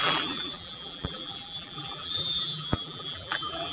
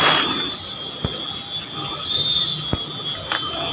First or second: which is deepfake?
first